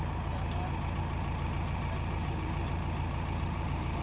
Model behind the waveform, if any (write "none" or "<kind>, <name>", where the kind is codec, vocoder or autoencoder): none